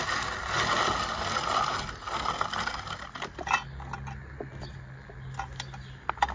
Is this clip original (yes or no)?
yes